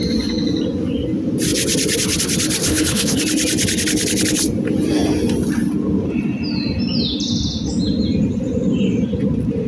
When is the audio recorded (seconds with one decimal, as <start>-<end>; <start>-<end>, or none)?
0.0-2.6; 3.2-9.7